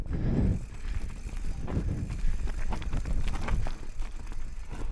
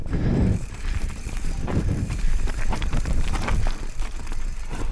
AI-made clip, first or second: second